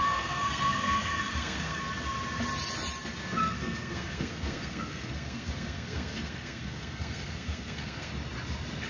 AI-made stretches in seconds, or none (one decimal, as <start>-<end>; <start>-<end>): 0.0-1.8; 3.4-8.1